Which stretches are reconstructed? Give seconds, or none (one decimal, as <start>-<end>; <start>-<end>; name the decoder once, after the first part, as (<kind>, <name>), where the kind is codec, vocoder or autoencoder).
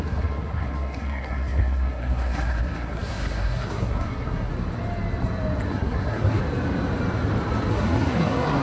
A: 0.0-4.5 (codec, SNAC); 5.7-6.4; 7.7-8.6